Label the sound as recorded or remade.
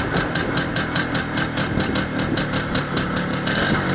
recorded